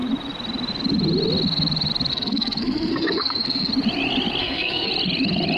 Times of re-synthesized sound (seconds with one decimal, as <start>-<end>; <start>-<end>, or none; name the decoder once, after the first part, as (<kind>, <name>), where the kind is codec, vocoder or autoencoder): 2.1-3.7 (codec, SNAC); 4.4-4.9